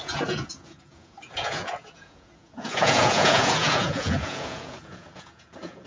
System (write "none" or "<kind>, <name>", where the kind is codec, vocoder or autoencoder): vocoder, Vocos